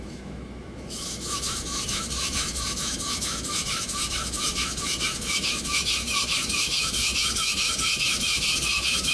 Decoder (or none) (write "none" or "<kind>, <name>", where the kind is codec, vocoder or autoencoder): autoencoder, DAC-VAE